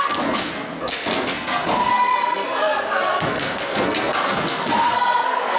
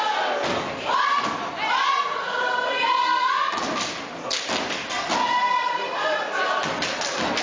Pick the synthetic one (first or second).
first